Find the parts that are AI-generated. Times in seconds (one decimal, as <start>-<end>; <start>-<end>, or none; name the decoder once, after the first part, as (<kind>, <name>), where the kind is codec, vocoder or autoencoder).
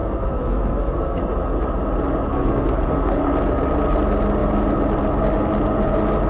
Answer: 0.0-1.2 (codec, SNAC); 2.3-3.3